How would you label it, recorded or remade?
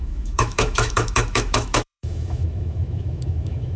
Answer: remade